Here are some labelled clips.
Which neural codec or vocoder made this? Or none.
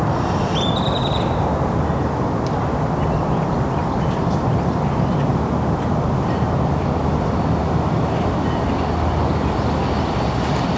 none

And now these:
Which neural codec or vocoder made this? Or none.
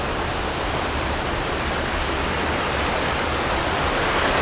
none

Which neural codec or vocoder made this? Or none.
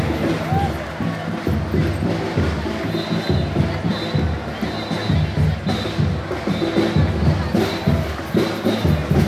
none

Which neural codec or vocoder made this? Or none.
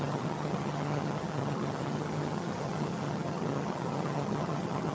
vocoder, HiFi-GAN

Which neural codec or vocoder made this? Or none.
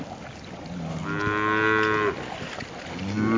none